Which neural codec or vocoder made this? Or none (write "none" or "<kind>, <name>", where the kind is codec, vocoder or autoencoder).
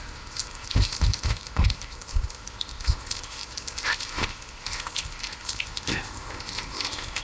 codec, ZipCodec